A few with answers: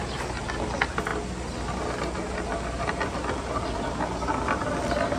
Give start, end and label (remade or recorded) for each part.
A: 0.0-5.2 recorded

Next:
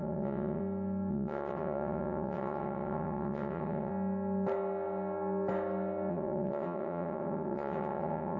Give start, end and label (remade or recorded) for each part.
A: 0.0-0.6 remade; 0.6-1.1 recorded; 1.1-3.9 remade; 3.9-6.1 recorded; 6.1-8.4 remade